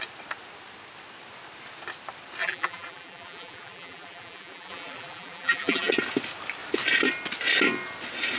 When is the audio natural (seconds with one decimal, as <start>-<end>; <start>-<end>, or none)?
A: 0.0-2.4; 5.9-8.4